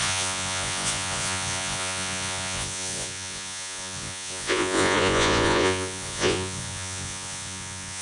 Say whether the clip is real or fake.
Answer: fake